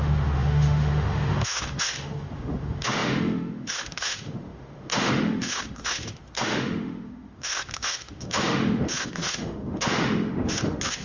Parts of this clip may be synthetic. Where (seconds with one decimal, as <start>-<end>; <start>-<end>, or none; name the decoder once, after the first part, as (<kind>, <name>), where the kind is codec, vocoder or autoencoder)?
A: 0.0-11.0 (autoencoder, DAC-VAE)